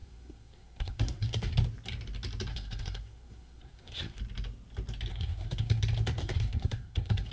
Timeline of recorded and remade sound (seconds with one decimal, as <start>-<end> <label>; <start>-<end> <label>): 0.0-1.5 remade; 1.5-2.5 recorded; 2.5-4.2 remade; 4.2-5.1 recorded; 5.1-5.8 remade; 5.8-6.2 recorded; 6.2-7.3 remade